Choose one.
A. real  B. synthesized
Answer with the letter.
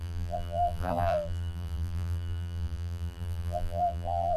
B